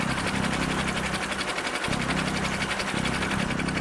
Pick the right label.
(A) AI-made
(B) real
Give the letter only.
B